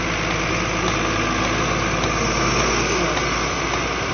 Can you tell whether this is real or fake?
real